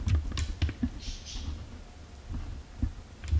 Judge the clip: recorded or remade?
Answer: recorded